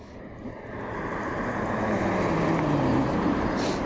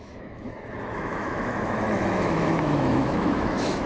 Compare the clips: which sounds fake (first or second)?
second